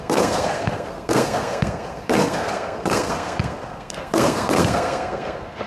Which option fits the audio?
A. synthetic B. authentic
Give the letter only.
A